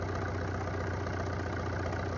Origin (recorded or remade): recorded